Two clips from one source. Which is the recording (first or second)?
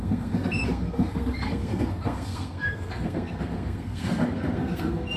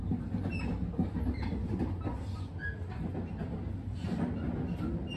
second